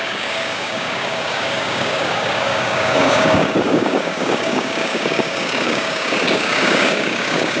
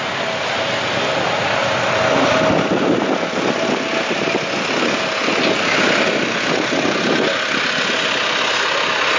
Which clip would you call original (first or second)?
second